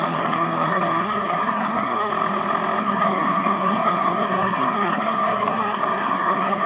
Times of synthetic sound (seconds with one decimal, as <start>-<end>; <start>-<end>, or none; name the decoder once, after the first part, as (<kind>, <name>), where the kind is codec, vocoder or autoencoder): 0.0-2.1 (codec, SNAC); 2.8-6.7